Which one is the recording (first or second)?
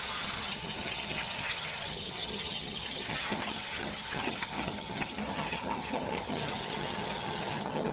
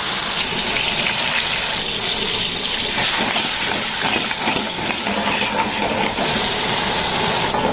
second